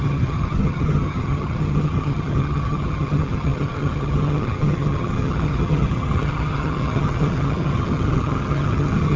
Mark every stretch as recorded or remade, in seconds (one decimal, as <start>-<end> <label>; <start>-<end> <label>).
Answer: 0.0-9.2 remade